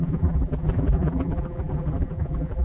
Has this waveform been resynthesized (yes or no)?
yes